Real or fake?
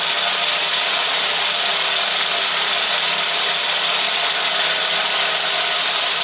real